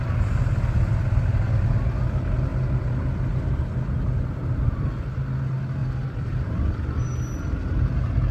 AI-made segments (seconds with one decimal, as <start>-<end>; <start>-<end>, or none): 4.4-5.0; 5.8-6.6